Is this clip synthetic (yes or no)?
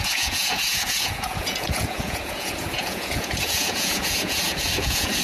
yes